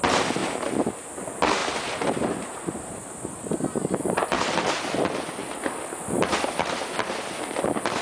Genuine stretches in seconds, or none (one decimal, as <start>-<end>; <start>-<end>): 0.0-1.6; 3.4-5.4; 6.8-8.0